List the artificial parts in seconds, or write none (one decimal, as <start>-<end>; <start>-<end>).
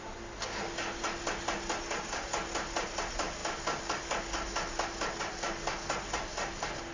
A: none